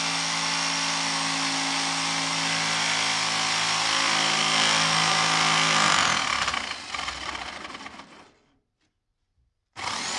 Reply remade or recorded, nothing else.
recorded